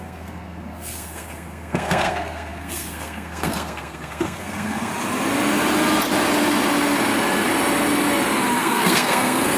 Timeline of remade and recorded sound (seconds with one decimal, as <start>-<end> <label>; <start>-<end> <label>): 0.0-4.9 remade; 4.9-8.6 recorded; 8.6-9.6 remade